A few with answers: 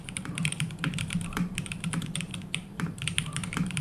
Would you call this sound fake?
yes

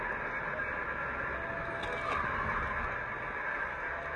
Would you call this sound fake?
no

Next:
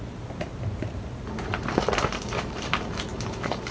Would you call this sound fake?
yes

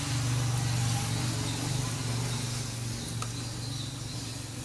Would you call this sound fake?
no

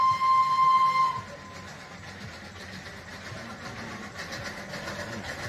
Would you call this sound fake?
no